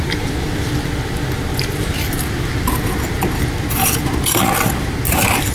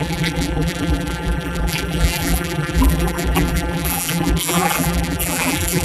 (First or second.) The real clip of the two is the first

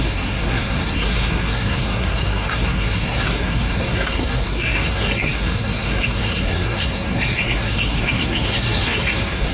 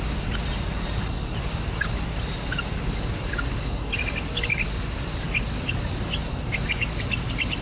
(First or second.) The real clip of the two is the second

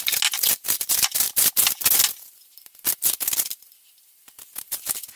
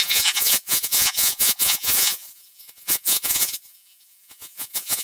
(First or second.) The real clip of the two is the first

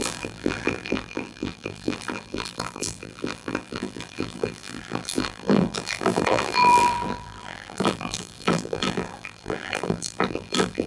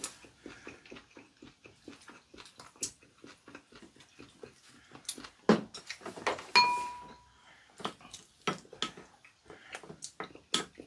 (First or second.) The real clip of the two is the second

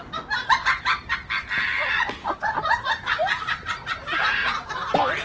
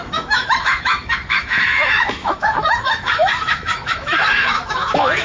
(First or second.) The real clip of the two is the first